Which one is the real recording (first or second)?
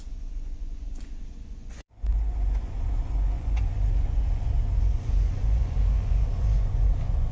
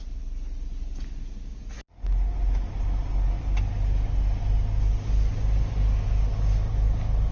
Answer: second